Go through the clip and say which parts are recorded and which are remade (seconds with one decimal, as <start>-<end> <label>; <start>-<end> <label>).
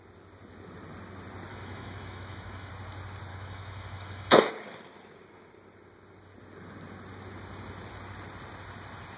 0.0-1.5 recorded; 1.5-2.7 remade; 2.7-3.3 recorded; 3.3-4.5 remade; 4.5-9.2 recorded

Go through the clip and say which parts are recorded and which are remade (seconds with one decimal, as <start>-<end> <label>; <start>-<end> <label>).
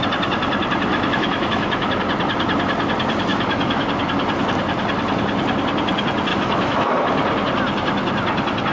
0.0-0.9 recorded; 0.9-2.0 remade; 2.0-3.3 recorded; 3.3-3.9 remade; 3.9-6.3 recorded; 6.3-6.9 remade; 6.9-8.7 recorded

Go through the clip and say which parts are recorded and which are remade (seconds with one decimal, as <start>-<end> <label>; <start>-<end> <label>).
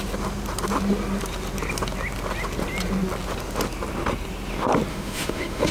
0.0-4.9 recorded; 4.9-5.7 remade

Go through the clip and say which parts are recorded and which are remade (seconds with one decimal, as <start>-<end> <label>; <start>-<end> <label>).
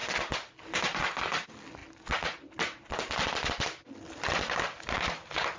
0.0-5.6 recorded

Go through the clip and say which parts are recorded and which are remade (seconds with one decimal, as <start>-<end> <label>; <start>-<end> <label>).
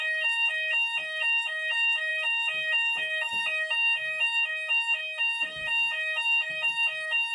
0.0-7.3 remade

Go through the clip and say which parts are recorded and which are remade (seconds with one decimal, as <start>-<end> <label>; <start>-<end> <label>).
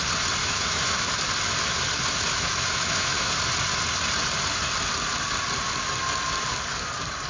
0.0-0.4 recorded; 0.4-1.1 remade; 1.1-2.3 recorded; 2.3-3.4 remade; 3.4-7.3 recorded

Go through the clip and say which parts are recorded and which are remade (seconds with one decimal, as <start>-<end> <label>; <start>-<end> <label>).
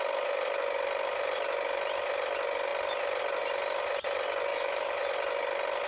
0.0-4.5 recorded; 4.5-5.1 remade; 5.1-5.9 recorded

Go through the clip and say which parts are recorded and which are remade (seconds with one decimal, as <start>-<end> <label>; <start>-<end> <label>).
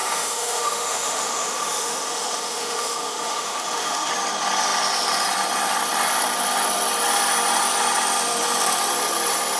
0.0-4.1 remade; 4.1-9.6 recorded